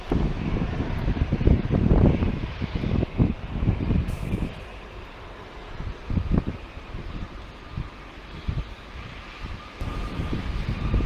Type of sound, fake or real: fake